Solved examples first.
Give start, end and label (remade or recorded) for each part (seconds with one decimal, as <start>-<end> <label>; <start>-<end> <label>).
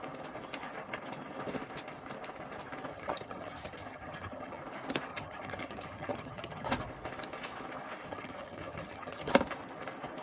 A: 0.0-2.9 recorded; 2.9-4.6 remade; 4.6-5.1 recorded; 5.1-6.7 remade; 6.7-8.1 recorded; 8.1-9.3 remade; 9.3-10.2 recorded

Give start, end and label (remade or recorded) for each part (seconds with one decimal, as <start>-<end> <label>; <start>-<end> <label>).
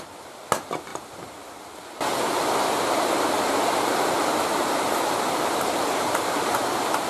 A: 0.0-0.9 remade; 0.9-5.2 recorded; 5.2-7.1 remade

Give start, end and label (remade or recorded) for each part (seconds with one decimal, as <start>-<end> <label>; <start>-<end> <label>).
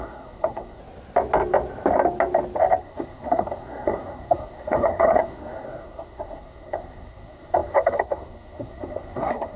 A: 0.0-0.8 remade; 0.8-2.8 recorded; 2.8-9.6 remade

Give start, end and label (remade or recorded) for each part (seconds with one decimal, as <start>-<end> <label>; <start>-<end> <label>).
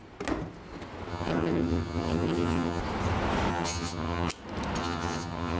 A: 0.0-1.1 recorded; 1.1-2.8 remade; 2.8-3.5 recorded; 3.5-4.3 remade; 4.3-4.8 recorded; 4.8-5.6 remade